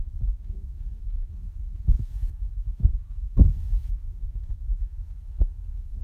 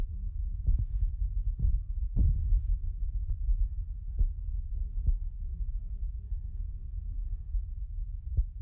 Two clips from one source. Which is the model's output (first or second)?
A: first